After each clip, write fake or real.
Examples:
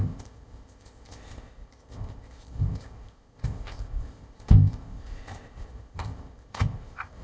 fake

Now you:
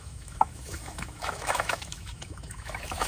fake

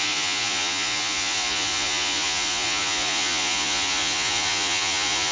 fake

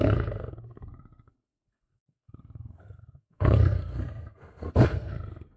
fake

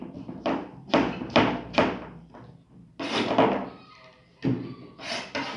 real